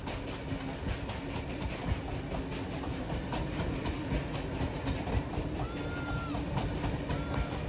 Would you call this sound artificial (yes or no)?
no